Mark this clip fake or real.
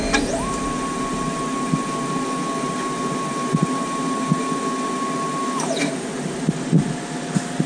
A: real